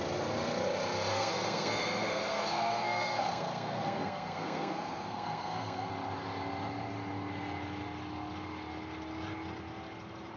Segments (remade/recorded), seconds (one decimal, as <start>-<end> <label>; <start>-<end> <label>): 0.0-1.1 recorded; 1.1-5.9 remade; 5.9-10.4 recorded